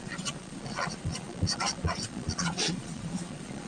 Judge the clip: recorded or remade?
remade